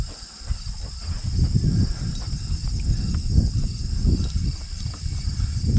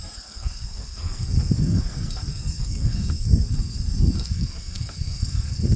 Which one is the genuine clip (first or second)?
first